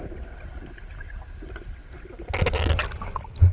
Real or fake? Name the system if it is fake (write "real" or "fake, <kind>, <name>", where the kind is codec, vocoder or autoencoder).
real